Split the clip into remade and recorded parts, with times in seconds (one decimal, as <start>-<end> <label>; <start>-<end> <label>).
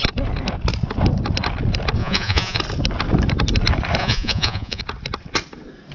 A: 0.0-2.0 recorded; 2.0-2.6 remade; 2.6-4.0 recorded; 4.0-4.8 remade; 4.8-5.9 recorded